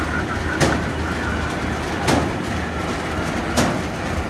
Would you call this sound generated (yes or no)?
no